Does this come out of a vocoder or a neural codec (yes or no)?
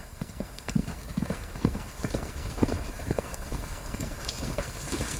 yes